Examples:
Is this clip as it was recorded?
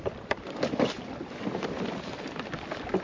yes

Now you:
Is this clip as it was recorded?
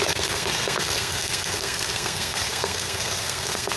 no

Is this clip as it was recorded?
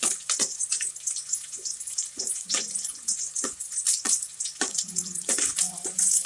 no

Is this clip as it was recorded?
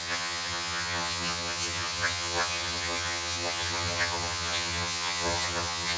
no